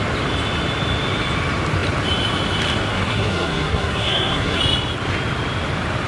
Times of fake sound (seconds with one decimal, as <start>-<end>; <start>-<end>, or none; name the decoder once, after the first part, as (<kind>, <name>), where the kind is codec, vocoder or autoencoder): 2.9-4.6 (codec, SNAC)